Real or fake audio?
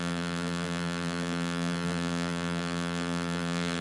fake